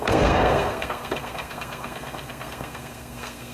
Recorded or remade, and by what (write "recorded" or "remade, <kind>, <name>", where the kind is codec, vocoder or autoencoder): remade, codec, SNAC